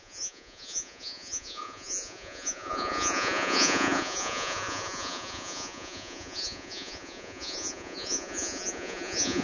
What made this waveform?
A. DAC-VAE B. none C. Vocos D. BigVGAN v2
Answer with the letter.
C